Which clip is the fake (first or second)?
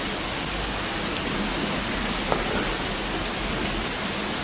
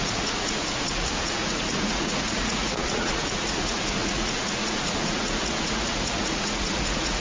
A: second